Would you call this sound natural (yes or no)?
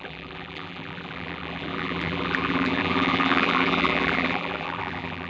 no